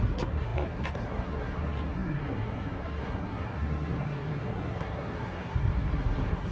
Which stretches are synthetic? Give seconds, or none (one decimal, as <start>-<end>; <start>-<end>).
0.0-6.5